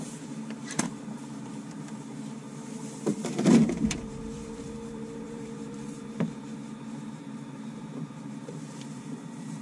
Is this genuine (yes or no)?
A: no